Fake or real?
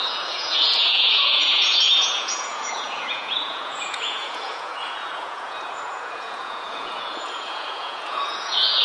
fake